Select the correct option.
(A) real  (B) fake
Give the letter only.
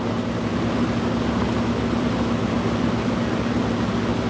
A